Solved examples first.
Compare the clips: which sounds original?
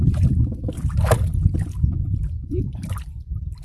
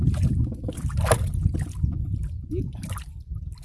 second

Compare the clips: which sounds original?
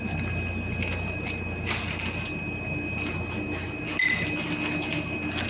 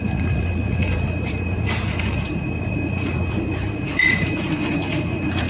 first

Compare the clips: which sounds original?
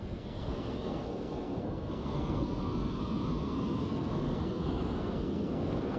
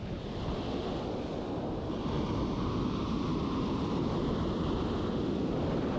second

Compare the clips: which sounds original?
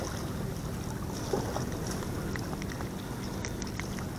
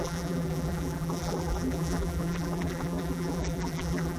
first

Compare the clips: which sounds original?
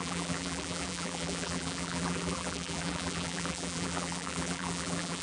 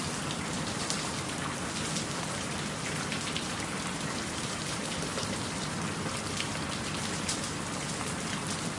second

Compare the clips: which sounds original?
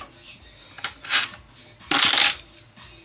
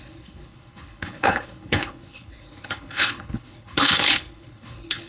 first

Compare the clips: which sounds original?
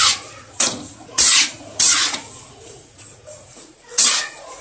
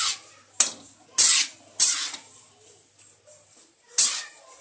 second